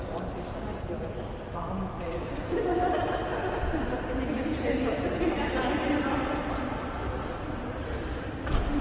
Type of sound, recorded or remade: recorded